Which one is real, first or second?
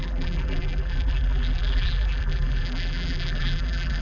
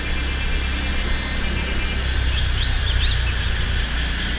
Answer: second